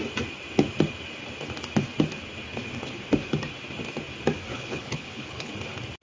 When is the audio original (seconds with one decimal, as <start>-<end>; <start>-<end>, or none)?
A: 0.0-4.5; 5.5-6.0